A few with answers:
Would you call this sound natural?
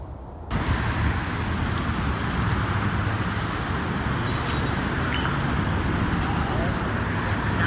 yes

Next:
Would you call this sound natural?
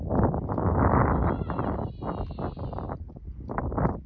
yes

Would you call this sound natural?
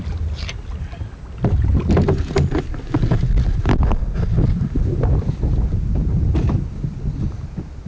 yes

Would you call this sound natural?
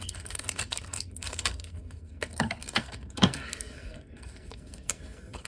no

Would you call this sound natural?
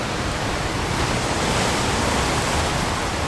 yes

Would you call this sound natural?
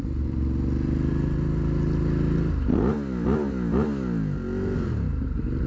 yes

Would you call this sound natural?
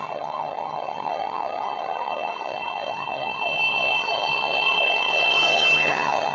no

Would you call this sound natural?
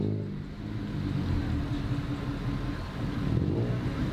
yes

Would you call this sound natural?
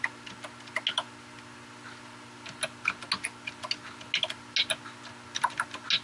yes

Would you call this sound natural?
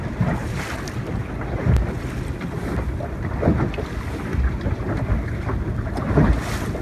yes